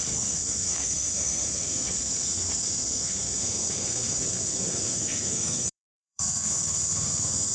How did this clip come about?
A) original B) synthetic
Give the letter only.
B